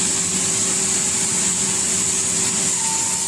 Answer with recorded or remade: recorded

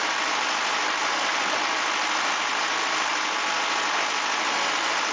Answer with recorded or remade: recorded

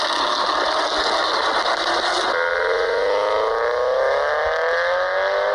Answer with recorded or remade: recorded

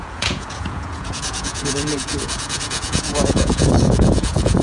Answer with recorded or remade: remade